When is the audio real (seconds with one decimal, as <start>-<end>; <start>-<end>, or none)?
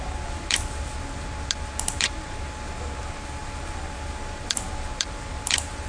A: 0.0-5.9